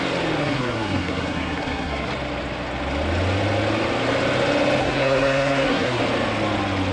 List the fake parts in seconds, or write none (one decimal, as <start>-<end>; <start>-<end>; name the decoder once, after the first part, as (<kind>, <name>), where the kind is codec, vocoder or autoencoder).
0.4-2.1 (codec, SNAC); 4.8-6.0